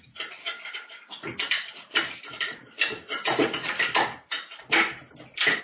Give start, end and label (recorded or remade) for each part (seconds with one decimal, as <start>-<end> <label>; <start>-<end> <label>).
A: 0.0-0.4 recorded; 0.4-1.1 remade; 1.1-5.6 recorded